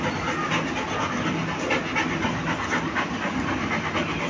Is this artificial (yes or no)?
no